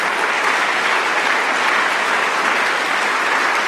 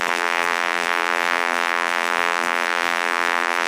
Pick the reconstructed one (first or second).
second